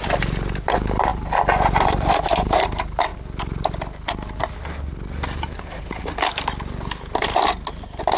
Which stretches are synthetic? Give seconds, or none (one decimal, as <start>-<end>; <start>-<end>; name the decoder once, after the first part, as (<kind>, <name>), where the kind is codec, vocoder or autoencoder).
1.1-2.6 (vocoder, BigVGAN v2)

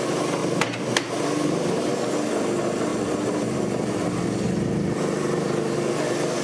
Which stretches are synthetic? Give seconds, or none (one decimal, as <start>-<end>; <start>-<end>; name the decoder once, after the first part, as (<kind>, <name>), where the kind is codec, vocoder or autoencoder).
0.4-1.9 (vocoder, BigVGAN v2); 2.9-5.9